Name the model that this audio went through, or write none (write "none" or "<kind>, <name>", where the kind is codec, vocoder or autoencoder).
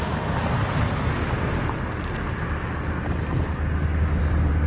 none